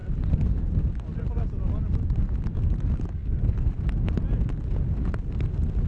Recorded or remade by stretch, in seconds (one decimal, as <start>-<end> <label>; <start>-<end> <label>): 0.0-5.9 recorded